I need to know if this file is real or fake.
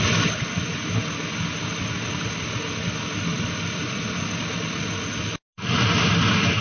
real